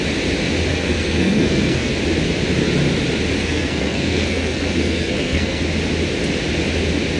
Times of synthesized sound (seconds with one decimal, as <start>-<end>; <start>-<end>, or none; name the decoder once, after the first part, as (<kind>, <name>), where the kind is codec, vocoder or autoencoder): 0.7-1.9 (codec, SNAC); 3.4-5.6